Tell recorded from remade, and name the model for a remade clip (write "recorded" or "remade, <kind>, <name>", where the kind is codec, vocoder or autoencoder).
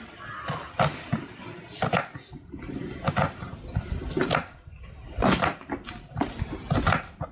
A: recorded